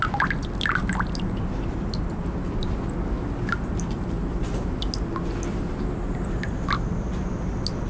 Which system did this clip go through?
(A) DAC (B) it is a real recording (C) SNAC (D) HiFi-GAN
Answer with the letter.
B